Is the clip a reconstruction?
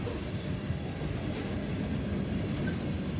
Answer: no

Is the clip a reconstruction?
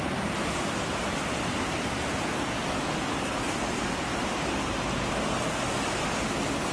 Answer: no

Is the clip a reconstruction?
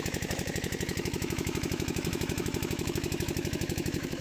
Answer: yes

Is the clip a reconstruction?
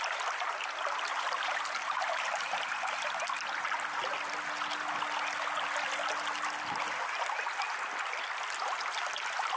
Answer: no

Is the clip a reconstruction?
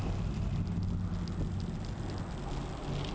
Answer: no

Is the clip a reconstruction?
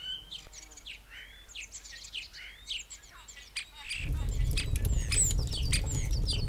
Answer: no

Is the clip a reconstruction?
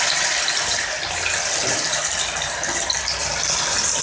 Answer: no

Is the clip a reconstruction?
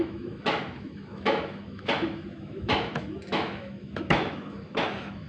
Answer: yes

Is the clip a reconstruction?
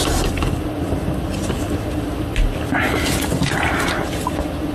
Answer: no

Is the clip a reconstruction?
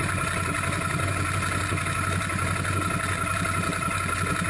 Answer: no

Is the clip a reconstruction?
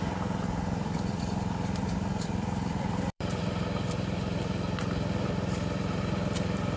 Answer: yes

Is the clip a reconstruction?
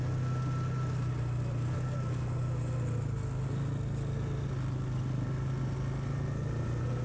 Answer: no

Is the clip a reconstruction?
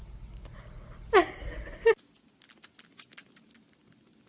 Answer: no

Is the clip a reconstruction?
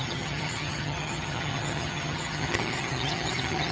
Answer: yes